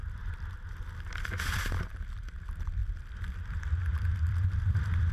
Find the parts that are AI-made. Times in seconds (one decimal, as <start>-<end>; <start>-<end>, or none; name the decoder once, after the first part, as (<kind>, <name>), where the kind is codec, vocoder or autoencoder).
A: 0.0-0.7 (vocoder, BigVGAN v2); 2.8-4.5